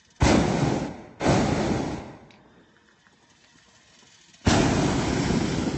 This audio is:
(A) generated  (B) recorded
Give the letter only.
B